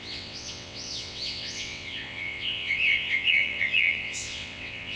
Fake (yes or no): yes